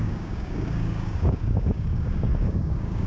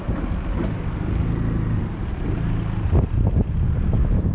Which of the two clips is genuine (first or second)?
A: second